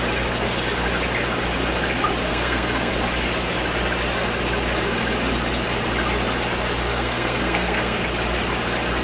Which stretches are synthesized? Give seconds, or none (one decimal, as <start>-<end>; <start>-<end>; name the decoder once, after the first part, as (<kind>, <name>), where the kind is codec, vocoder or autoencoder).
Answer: 2.3-2.9 (codec, SNAC); 6.9-8.0